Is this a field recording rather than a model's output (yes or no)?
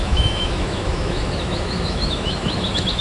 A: no